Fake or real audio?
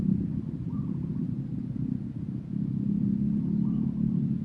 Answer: real